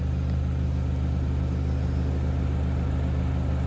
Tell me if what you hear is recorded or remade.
recorded